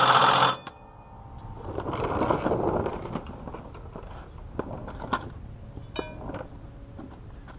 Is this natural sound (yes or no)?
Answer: yes